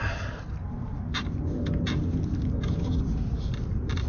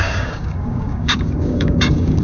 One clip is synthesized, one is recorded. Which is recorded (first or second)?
first